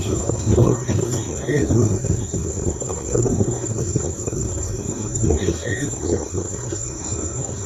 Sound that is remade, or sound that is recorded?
remade